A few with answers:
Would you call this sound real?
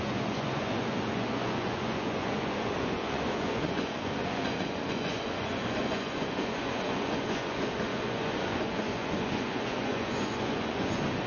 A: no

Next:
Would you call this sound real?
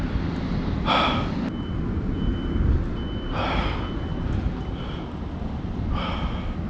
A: yes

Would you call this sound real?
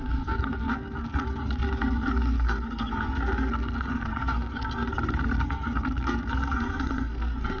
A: no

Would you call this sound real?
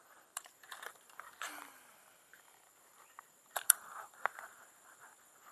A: no